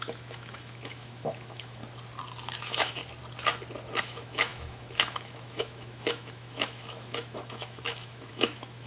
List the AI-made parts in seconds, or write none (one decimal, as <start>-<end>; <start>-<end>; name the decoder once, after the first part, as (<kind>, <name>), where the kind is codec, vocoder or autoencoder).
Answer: 0.0-1.8 (autoencoder, DAC-VAE); 2.5-3.0; 4.0-8.9